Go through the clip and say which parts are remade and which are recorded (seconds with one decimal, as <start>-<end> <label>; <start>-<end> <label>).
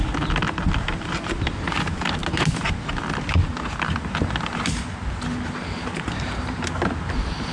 0.0-7.5 recorded